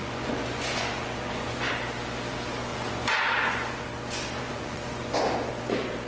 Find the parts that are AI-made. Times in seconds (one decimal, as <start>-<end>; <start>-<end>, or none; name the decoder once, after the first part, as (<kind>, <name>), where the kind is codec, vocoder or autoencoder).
0.0-1.7 (vocoder, Vocos); 2.7-5.5